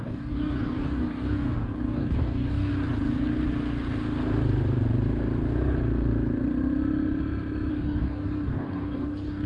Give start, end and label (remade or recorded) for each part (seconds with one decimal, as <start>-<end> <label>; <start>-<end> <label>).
0.0-2.7 remade; 2.7-7.7 recorded; 7.7-9.5 remade